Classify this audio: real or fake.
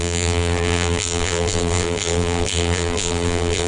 fake